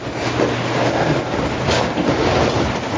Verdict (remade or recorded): recorded